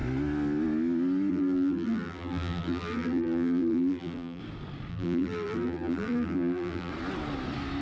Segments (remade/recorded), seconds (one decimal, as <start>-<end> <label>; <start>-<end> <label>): 0.0-1.3 recorded; 1.3-4.4 remade; 4.4-4.9 recorded; 4.9-6.9 remade; 6.9-7.8 recorded

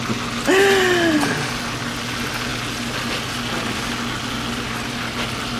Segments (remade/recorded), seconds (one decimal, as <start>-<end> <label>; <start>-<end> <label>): 0.0-5.6 recorded

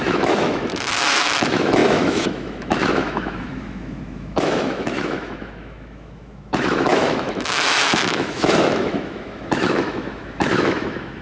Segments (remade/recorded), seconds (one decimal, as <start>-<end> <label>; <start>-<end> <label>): 0.0-11.2 remade

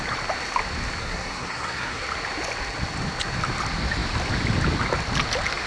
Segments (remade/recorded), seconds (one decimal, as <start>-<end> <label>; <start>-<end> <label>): 0.0-1.0 recorded; 1.0-2.0 remade; 2.0-5.7 recorded

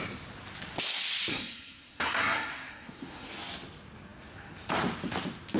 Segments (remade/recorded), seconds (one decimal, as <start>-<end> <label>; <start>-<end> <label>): 0.0-1.3 recorded; 1.3-3.3 remade; 3.3-5.6 recorded